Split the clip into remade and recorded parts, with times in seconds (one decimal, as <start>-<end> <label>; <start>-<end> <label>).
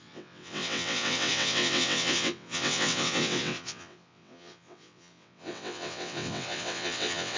0.0-7.4 remade